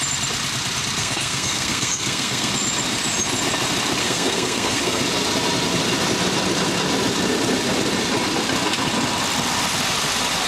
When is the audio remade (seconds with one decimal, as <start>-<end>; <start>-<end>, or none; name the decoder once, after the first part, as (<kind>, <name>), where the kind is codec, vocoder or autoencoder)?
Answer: 1.0-2.5 (codec, SNAC); 4.0-5.0